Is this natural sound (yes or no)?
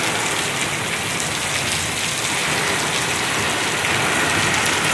yes